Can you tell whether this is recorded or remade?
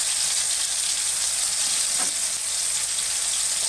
recorded